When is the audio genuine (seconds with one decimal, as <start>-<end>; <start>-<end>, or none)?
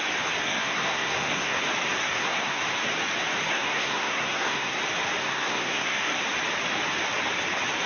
0.0-0.4; 1.6-2.0; 2.6-3.5; 4.8-5.2; 6.2-7.9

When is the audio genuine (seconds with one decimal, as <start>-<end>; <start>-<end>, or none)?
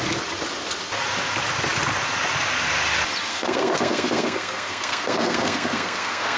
0.0-3.3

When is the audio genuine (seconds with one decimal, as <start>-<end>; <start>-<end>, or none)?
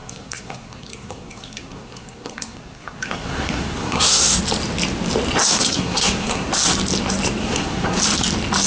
4.4-5.4; 6.5-7.4; 8.0-8.7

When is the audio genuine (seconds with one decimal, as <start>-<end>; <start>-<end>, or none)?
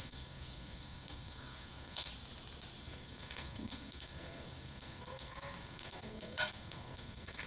2.1-2.8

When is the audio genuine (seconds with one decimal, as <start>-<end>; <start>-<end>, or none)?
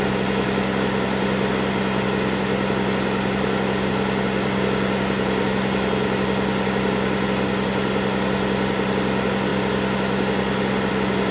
0.0-11.3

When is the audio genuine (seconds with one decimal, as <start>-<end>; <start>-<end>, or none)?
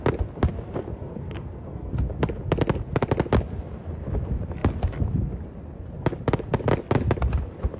0.0-0.8; 1.9-7.8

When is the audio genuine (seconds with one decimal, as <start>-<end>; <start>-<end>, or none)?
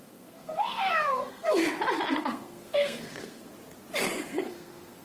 1.6-2.1; 3.5-4.2